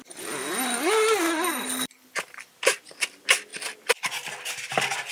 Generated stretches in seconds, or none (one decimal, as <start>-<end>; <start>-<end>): 3.5-4.1